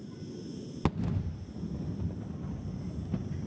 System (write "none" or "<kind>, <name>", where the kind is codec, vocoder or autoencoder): none